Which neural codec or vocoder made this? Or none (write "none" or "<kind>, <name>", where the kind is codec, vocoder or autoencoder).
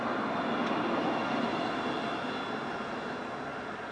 none